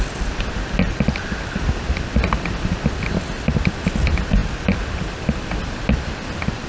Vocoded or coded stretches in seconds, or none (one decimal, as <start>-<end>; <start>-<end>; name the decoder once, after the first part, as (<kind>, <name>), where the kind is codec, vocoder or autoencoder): none